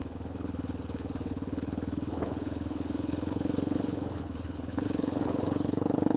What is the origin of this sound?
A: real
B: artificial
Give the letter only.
B